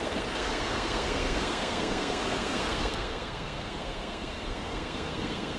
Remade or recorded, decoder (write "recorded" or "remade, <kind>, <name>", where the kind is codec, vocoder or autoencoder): remade, codec, SNAC